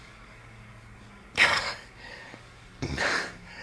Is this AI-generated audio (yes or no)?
yes